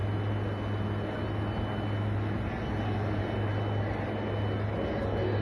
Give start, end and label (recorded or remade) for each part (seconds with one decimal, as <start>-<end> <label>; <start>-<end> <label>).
0.0-5.4 recorded